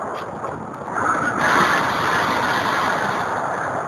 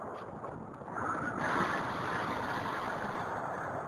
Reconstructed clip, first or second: second